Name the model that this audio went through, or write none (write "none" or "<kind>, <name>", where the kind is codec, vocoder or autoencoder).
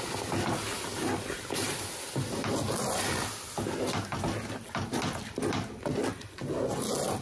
none